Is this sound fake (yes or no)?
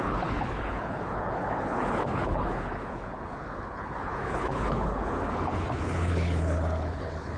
yes